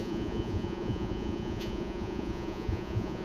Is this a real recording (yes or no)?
no